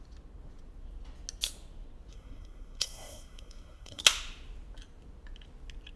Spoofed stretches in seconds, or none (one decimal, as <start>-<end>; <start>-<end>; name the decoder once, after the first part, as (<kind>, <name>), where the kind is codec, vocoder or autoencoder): 2.1-4.0 (codec, SNAC)